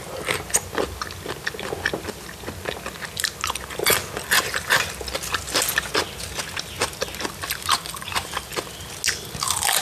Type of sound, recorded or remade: recorded